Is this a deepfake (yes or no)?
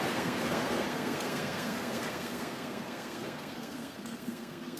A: yes